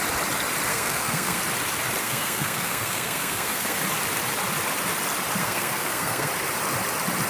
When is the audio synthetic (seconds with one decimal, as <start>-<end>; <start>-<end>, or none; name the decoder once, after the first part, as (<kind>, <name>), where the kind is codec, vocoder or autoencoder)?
0.7-1.4 (codec, SNAC); 2.0-3.8; 5.4-6.3